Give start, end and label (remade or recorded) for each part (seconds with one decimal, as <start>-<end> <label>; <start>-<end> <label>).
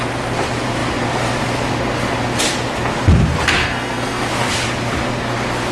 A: 0.0-3.6 recorded; 3.6-4.3 remade; 4.3-5.7 recorded